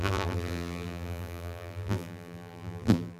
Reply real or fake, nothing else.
fake